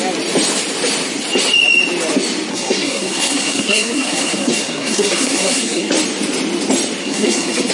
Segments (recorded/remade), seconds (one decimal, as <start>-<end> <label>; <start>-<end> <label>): 0.0-2.5 recorded; 2.5-5.9 remade; 5.9-7.0 recorded; 7.0-7.7 remade